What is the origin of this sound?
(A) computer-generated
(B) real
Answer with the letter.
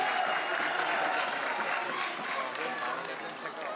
B